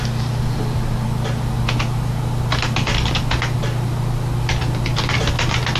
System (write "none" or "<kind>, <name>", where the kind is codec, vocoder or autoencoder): none